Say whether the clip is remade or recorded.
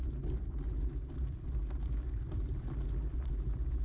recorded